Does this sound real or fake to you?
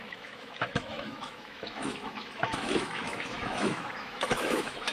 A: fake